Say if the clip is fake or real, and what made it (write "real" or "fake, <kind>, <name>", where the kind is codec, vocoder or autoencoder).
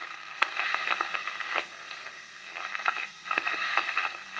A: fake, codec, SNAC